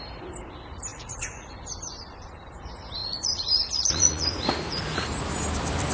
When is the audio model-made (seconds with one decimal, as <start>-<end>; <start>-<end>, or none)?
0.9-1.5; 3.0-5.2